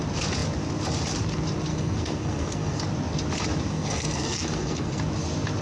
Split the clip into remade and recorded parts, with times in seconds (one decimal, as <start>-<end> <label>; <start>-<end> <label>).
0.0-1.7 recorded; 1.7-2.8 remade; 2.8-3.7 recorded; 3.7-5.0 remade; 5.0-5.6 recorded